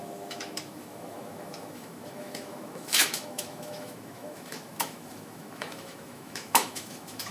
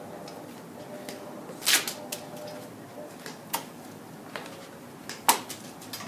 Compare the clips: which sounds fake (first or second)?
first